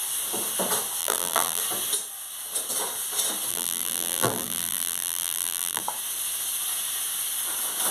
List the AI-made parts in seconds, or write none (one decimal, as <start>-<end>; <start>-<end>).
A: 1.0-1.6; 3.5-5.8

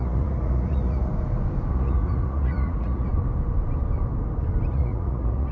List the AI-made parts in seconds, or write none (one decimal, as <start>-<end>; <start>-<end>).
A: 0.0-1.1; 1.7-3.1; 4.7-5.5

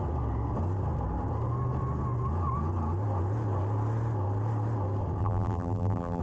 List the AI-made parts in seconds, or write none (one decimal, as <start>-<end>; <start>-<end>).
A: 5.2-6.2